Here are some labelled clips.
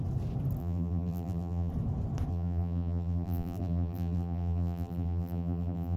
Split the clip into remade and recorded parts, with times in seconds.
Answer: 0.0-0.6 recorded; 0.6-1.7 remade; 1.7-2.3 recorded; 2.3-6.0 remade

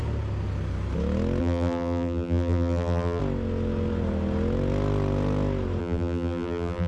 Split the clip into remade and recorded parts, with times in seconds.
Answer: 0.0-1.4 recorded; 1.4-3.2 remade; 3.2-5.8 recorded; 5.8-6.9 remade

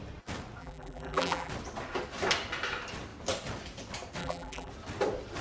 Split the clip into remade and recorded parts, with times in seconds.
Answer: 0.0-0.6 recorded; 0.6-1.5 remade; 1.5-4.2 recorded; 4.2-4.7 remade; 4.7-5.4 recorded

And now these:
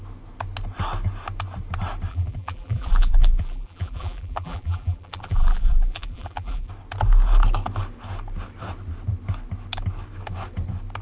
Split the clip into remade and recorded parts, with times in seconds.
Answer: 0.0-2.1 recorded; 2.1-6.7 remade; 6.7-11.0 recorded

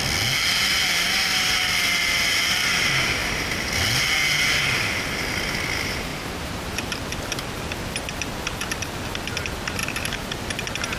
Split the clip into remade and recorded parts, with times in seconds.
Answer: 0.0-6.1 recorded; 6.1-6.9 remade; 6.9-11.0 recorded

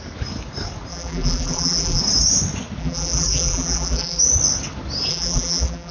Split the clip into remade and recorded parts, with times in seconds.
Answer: 0.0-0.9 recorded; 0.9-2.0 remade; 2.0-2.8 recorded; 2.8-4.2 remade; 4.2-5.1 recorded; 5.1-5.9 remade

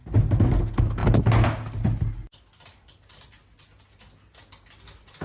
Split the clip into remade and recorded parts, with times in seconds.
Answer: 0.0-5.2 recorded